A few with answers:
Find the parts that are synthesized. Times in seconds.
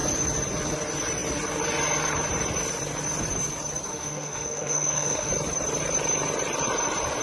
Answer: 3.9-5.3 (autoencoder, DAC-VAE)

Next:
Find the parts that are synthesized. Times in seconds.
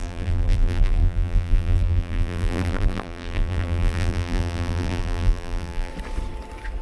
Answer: 0.0-5.9 (vocoder, BigVGAN v2)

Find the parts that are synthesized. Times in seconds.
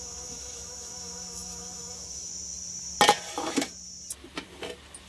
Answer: 0.0-2.3 (autoencoder, DAC-VAE)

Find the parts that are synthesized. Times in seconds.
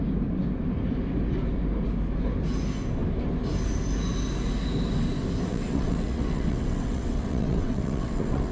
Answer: 5.5-8.5 (vocoder, WaveNeXt)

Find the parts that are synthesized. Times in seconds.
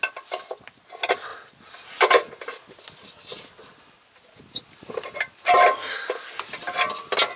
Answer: none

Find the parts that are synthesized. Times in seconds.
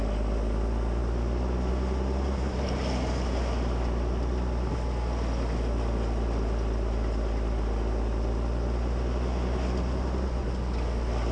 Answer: none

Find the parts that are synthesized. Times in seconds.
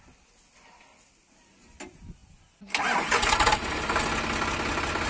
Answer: none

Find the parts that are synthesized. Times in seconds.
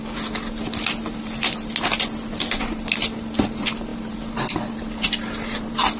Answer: none